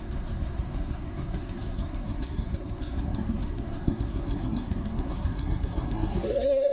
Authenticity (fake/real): fake